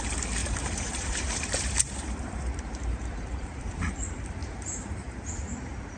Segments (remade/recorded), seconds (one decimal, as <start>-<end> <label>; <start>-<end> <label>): 0.0-0.4 recorded; 0.4-3.9 remade; 3.9-4.4 recorded; 4.4-5.6 remade; 5.6-6.0 recorded